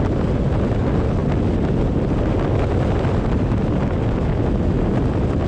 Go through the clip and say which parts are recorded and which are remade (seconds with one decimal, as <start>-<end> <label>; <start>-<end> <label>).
0.0-5.5 recorded

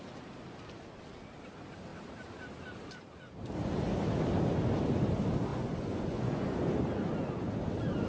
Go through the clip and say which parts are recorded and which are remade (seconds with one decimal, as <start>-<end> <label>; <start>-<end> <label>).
0.0-5.5 recorded; 5.5-6.6 remade; 6.6-8.1 recorded